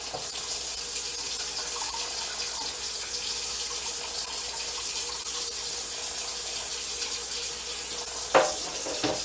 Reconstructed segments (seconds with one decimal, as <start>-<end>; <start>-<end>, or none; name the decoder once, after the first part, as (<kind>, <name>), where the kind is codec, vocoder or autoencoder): none